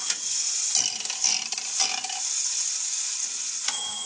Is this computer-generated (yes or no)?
no